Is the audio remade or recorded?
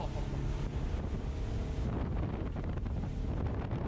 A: recorded